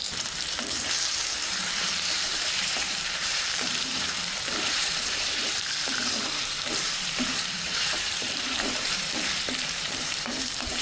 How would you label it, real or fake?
fake